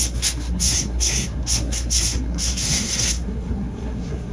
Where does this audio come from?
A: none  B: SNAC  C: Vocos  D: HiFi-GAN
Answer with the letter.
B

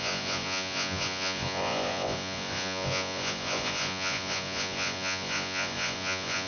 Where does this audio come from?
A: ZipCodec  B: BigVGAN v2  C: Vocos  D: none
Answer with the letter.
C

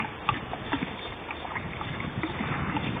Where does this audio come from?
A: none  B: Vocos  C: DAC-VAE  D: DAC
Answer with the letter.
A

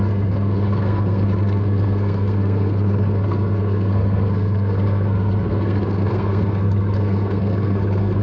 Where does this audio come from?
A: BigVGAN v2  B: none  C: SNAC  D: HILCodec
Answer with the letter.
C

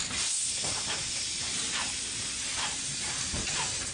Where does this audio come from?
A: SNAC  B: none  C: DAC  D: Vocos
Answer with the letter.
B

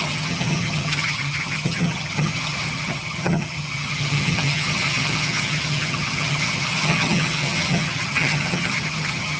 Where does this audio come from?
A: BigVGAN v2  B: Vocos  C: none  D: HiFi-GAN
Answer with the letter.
D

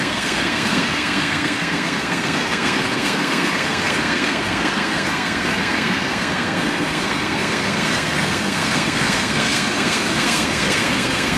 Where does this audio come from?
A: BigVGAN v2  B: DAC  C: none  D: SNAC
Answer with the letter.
D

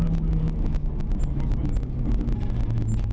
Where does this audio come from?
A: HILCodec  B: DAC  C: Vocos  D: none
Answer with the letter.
D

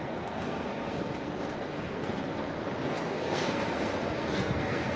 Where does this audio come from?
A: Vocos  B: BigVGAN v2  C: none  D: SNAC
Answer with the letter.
D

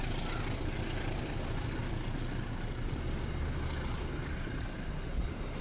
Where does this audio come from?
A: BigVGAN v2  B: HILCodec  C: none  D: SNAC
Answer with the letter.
C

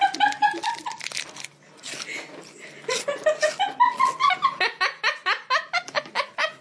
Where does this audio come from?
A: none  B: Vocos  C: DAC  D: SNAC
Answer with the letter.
A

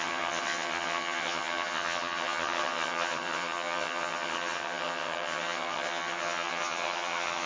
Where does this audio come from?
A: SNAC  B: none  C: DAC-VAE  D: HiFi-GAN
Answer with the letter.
D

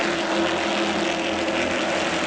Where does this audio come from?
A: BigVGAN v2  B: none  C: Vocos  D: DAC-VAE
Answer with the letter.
B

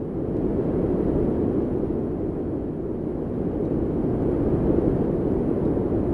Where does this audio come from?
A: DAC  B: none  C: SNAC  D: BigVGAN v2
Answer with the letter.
B